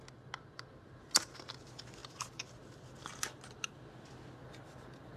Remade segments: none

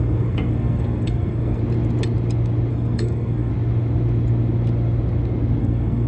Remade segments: 0.0-1.6 (codec, SNAC); 2.7-3.5; 5.6-6.1

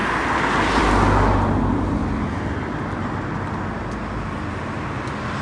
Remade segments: none

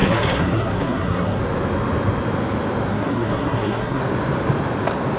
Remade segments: 0.0-1.4 (codec, SNAC); 2.9-4.0